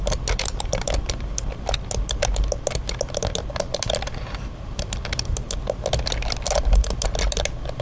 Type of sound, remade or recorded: recorded